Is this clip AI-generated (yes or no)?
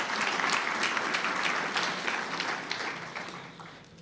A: no